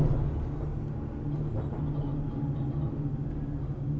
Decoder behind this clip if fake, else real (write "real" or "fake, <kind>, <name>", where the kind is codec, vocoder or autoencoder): real